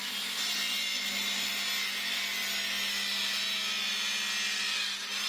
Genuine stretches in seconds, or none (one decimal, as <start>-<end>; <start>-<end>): 0.0-5.3